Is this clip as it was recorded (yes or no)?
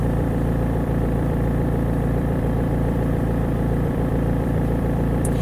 no